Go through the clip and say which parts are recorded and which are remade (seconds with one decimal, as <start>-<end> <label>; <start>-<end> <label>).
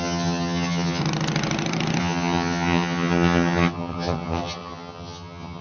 0.0-1.0 remade; 1.0-2.0 recorded; 2.0-5.6 remade